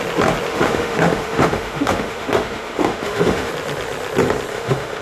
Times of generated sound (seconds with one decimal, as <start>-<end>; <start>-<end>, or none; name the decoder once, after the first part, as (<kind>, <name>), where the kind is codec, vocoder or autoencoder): 0.5-3.5 (autoencoder, DAC-VAE); 4.5-5.0